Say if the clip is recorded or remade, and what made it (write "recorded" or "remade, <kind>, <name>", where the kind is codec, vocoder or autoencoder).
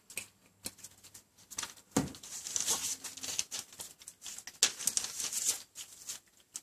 recorded